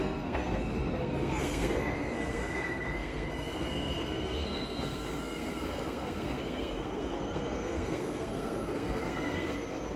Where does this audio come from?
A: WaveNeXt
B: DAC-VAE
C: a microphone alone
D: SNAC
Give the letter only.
D